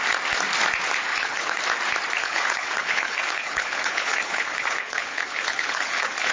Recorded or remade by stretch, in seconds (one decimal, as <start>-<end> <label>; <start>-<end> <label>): 0.0-1.1 recorded; 1.1-1.6 remade; 1.6-2.2 recorded; 2.2-6.3 remade